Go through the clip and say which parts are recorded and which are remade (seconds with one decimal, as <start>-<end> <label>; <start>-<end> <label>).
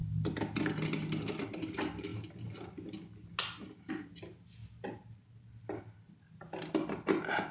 0.0-7.5 recorded